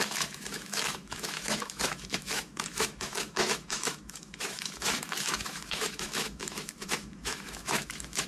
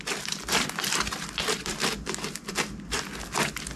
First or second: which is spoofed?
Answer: first